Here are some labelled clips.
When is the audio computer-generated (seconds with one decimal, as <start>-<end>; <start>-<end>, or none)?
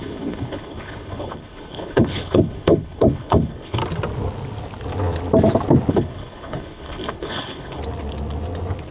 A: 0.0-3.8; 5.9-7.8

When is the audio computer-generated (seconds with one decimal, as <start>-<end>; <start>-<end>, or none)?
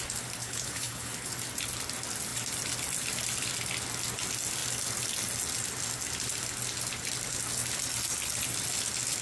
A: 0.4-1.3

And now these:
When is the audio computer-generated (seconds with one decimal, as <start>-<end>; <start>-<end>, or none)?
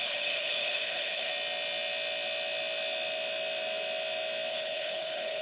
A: 0.0-1.3; 4.5-5.4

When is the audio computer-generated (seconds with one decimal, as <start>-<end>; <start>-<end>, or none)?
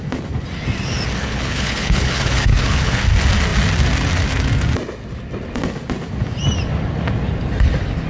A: 1.2-3.0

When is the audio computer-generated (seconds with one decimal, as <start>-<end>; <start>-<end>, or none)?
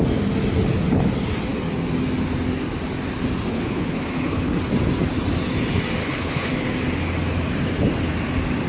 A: 3.5-4.6; 6.0-6.5